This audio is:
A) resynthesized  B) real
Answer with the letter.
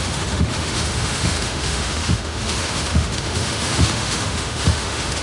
A